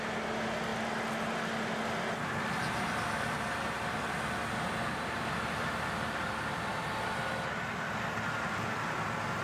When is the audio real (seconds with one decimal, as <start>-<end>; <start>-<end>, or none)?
0.0-9.4